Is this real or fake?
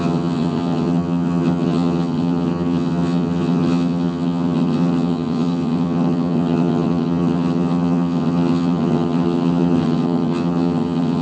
fake